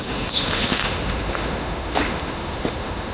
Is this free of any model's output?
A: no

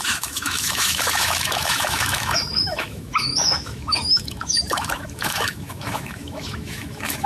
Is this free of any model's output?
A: no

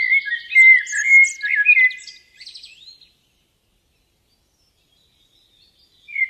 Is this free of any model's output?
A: yes